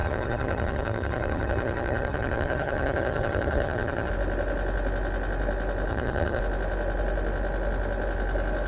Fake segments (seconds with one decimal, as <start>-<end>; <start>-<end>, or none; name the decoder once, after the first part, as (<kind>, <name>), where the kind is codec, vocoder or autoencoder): 0.0-4.1 (vocoder, HiFi-GAN); 5.9-6.4